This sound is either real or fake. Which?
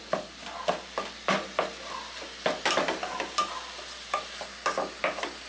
real